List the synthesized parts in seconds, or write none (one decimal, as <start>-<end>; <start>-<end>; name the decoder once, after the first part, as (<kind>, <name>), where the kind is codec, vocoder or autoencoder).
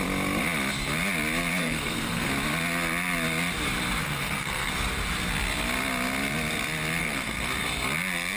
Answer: 1.6-2.3 (codec, SNAC); 4.0-4.7; 7.0-7.5